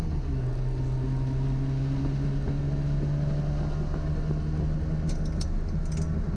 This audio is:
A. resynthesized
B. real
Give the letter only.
B